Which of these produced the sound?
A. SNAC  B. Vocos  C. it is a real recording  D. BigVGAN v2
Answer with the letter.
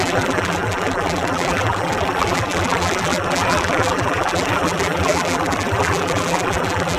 D